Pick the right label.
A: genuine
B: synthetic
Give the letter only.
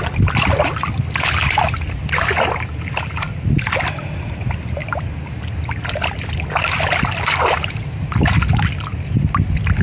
A